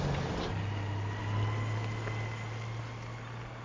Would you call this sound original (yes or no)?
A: yes